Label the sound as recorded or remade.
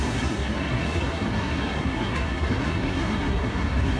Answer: remade